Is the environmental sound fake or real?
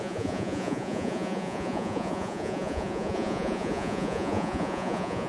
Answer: fake